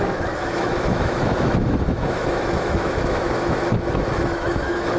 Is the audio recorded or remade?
remade